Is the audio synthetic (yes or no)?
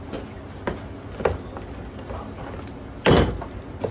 no